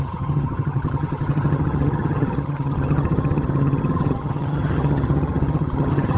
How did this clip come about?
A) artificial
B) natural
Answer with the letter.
A